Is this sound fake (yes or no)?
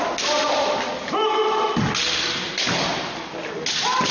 no